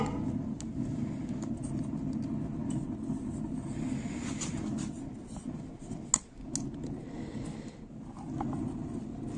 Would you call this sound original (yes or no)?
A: yes